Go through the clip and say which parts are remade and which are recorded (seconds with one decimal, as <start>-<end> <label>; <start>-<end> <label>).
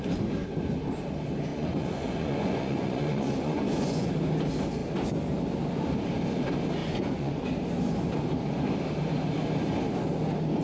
0.0-1.5 recorded; 1.5-4.1 remade; 4.1-6.8 recorded; 6.8-7.4 remade; 7.4-10.6 recorded